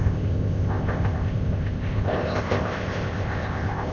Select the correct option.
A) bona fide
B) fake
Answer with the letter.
B